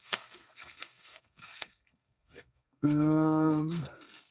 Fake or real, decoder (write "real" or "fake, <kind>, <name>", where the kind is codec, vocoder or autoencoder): fake, codec, SNAC